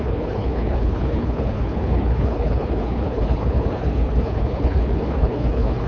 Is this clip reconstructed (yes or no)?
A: yes